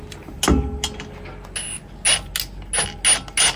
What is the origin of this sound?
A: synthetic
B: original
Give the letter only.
B